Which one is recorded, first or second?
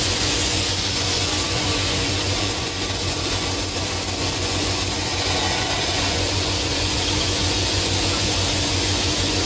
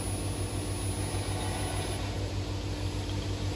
second